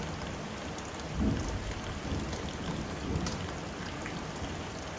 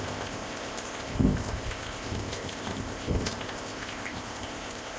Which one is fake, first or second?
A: second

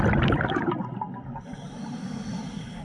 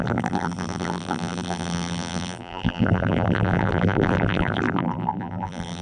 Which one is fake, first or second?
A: second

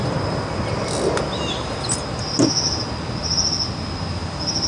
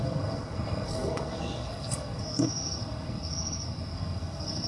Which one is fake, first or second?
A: second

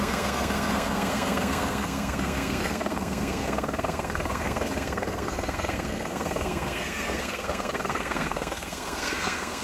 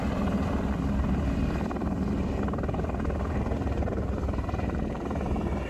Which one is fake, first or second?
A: first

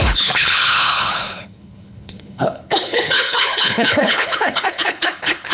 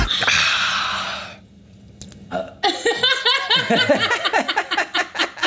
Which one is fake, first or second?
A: first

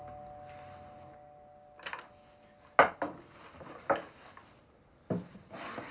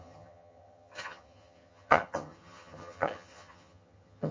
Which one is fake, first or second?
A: second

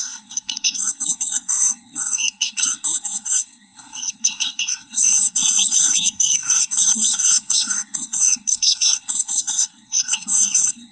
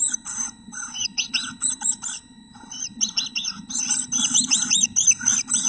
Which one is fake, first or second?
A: first